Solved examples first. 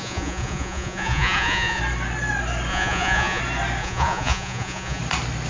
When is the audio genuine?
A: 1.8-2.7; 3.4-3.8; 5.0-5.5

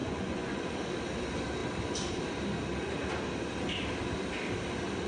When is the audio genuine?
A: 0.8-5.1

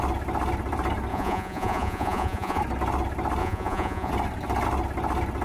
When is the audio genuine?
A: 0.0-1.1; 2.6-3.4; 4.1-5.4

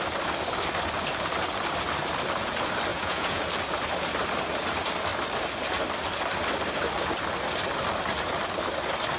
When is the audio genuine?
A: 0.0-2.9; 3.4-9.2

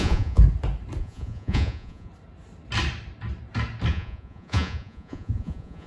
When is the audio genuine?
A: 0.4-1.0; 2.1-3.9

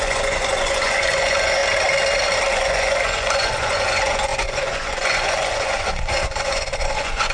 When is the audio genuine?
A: 1.6-2.5

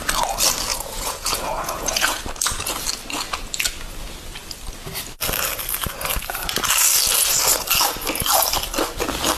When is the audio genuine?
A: 0.0-0.7; 2.2-9.4

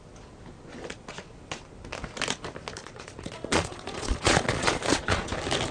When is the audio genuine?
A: 0.0-2.8; 5.3-5.7